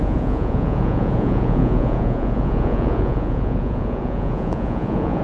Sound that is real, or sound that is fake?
fake